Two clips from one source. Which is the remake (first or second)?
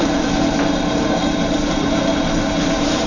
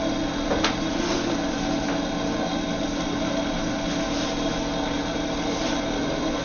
first